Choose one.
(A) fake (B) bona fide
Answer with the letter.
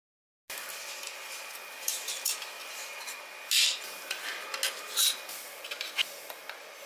B